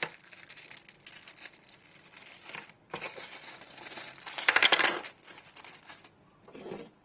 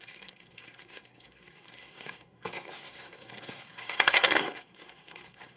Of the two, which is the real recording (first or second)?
first